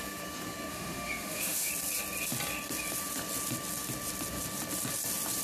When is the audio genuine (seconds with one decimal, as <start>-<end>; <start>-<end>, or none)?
0.0-0.7; 1.7-5.4